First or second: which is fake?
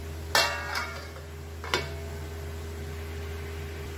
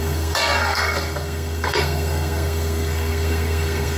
second